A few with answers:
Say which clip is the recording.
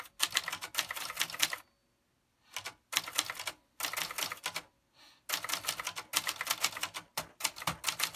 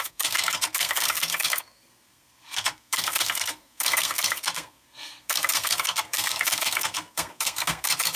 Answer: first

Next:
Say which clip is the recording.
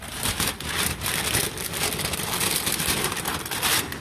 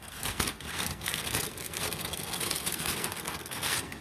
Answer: first